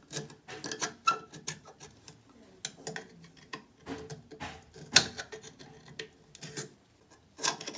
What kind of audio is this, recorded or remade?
recorded